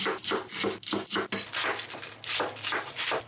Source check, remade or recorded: recorded